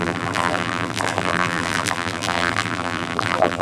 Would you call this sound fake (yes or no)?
yes